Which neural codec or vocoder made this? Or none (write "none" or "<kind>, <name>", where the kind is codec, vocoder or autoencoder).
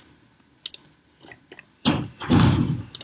none